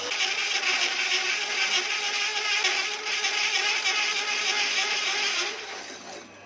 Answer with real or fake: real